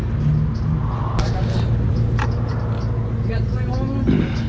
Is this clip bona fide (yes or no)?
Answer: yes